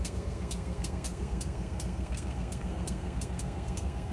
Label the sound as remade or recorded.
remade